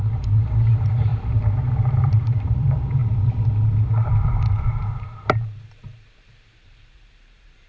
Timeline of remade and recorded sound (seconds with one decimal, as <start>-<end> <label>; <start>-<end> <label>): 0.0-3.0 remade; 3.0-4.9 recorded; 4.9-7.7 remade